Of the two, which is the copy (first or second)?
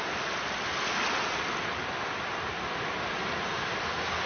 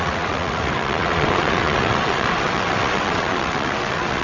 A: second